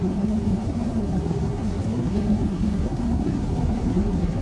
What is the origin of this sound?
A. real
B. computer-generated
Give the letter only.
B